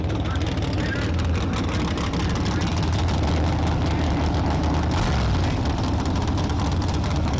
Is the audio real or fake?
real